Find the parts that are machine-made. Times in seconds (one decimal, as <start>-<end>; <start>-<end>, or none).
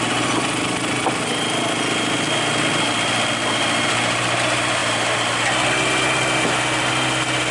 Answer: none